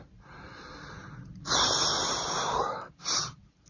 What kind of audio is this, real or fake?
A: real